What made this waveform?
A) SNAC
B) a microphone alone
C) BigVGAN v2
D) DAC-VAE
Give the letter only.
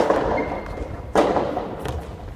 B